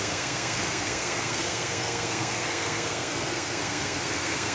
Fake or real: fake